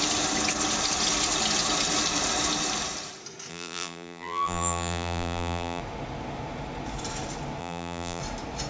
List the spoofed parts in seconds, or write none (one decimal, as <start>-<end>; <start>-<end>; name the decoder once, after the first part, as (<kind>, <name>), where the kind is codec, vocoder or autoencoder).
3.5-5.8 (vocoder, BigVGAN v2); 7.6-8.2